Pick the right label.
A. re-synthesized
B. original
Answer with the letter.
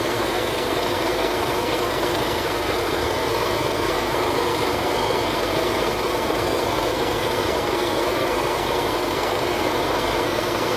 A